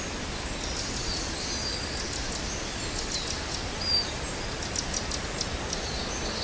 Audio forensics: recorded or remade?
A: recorded